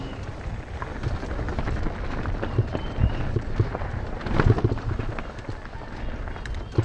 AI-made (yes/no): no